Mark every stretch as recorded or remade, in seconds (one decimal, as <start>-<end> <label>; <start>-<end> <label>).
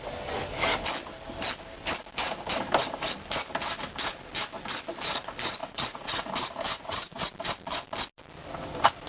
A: 0.0-5.6 recorded; 5.6-6.3 remade; 6.3-6.7 recorded; 6.7-7.3 remade; 7.3-9.1 recorded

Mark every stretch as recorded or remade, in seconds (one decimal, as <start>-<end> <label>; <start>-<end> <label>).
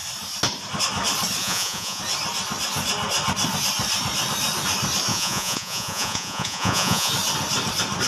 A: 0.0-1.4 recorded; 1.4-2.0 remade; 2.0-5.1 recorded; 5.1-7.1 remade; 7.1-8.1 recorded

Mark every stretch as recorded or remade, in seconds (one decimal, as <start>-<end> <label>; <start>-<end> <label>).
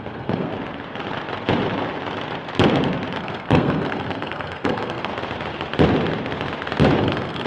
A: 0.0-0.5 remade; 0.5-3.2 recorded; 3.2-5.1 remade; 5.1-7.0 recorded; 7.0-7.5 remade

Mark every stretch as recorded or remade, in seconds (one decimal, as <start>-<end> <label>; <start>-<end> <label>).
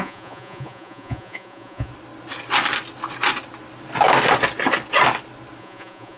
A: 0.0-1.9 remade; 1.9-5.6 recorded; 5.6-6.2 remade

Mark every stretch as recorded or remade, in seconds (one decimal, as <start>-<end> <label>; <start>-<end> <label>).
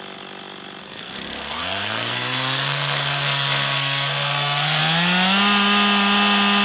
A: 0.0-0.8 recorded; 0.8-4.8 remade; 4.8-6.6 recorded